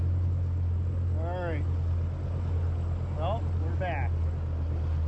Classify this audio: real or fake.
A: real